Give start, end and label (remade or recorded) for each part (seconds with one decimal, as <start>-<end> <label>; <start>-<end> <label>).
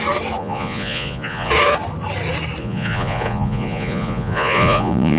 0.0-0.4 recorded; 0.4-1.5 remade; 1.5-2.6 recorded; 2.6-5.2 remade